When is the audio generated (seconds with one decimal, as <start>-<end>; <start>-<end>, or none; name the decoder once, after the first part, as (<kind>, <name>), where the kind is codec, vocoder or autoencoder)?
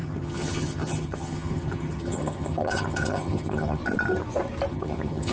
0.0-3.8 (vocoder, HiFi-GAN); 4.7-5.3